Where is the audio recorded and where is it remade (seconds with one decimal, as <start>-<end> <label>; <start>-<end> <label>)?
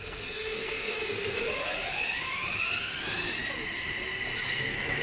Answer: 0.0-1.4 remade; 1.4-4.4 recorded; 4.4-5.0 remade